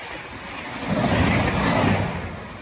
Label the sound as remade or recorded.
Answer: recorded